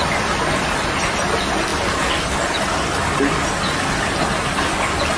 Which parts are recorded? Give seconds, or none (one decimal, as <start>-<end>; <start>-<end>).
0.0-5.2